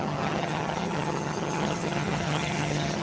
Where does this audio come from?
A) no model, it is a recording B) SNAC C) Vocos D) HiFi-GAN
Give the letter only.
D